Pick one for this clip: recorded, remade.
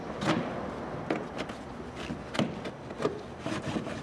recorded